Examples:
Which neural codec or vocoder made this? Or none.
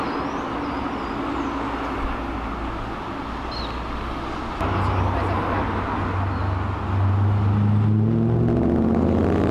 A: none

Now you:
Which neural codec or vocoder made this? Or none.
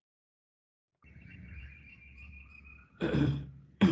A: vocoder, BigVGAN v2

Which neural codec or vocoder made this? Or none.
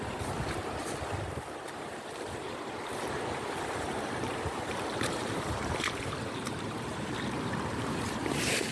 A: vocoder, BigVGAN v2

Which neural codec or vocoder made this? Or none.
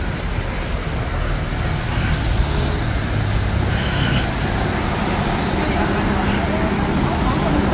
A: none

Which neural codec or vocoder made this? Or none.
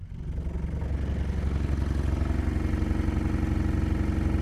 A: none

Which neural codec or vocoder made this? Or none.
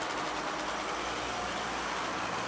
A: none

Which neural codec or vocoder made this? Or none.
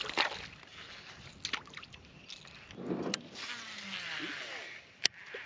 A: none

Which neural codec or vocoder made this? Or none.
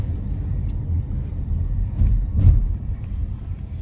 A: vocoder, BigVGAN v2